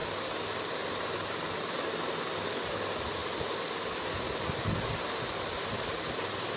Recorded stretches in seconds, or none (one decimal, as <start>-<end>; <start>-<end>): 0.0-6.6